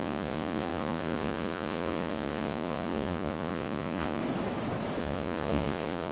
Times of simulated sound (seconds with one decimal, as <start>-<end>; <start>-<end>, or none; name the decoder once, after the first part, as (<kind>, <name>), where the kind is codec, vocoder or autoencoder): 0.0-4.2 (vocoder, Vocos); 5.0-6.1